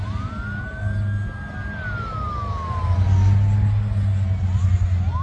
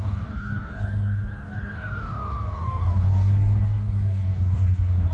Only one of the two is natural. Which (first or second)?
first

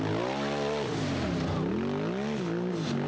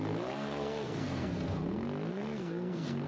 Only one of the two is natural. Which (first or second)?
first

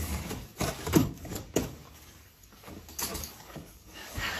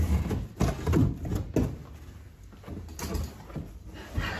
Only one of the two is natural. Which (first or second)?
second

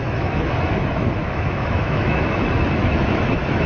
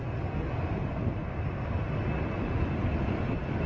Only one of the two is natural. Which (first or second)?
second